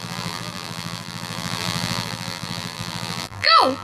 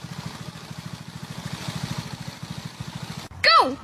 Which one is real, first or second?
second